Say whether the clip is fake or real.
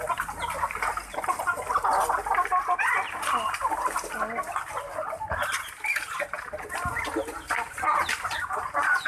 real